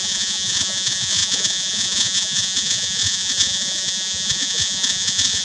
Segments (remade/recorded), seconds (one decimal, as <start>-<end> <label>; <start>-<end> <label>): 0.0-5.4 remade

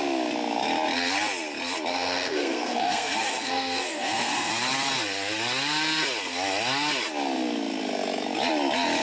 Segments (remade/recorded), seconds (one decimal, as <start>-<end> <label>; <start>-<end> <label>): 0.0-1.9 recorded; 1.9-4.5 remade; 4.5-9.0 recorded

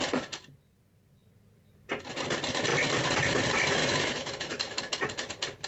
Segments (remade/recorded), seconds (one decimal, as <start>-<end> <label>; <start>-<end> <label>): 0.0-3.8 recorded; 3.8-4.8 remade; 4.8-5.7 recorded

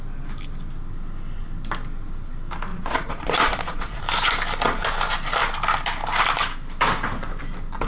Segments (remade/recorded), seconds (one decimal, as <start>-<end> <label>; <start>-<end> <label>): 0.0-2.7 recorded; 2.7-4.0 remade; 4.0-7.9 recorded

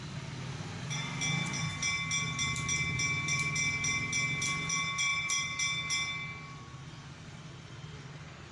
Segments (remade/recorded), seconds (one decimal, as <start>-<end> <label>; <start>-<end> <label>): 0.0-8.5 recorded

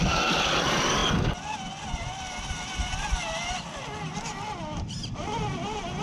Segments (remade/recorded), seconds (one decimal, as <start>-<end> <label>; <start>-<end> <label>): 0.0-6.0 recorded